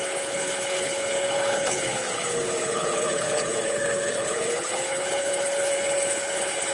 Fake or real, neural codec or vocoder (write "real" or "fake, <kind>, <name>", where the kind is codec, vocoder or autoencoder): fake, codec, HILCodec